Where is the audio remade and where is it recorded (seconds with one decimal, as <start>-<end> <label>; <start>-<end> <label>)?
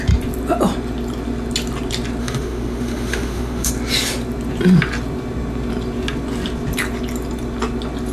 0.0-2.2 recorded; 2.2-3.7 remade; 3.7-8.1 recorded